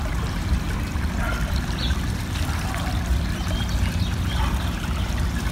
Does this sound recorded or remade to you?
remade